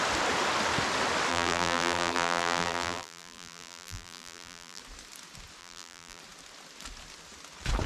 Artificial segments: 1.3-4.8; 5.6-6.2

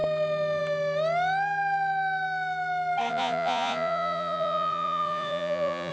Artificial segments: 3.1-5.9